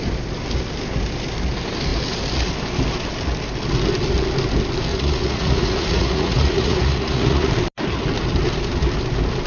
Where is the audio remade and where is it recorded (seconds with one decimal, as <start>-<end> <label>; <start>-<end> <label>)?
0.0-4.9 recorded; 4.9-7.5 remade; 7.5-9.5 recorded